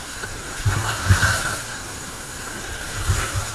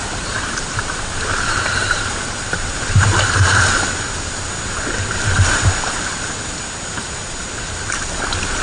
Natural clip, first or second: second